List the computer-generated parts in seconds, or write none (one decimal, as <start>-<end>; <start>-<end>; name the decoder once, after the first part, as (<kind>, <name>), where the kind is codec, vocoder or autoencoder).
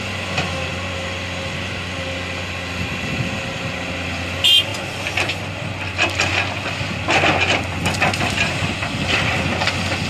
none